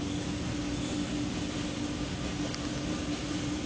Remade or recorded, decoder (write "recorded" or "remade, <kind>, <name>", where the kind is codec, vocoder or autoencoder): recorded